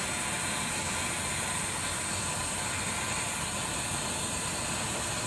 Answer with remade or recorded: recorded